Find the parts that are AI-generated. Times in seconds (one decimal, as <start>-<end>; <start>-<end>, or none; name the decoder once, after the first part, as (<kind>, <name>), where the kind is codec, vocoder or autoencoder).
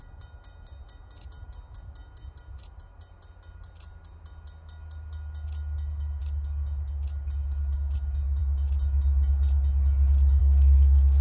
10.4-11.2 (codec, SNAC)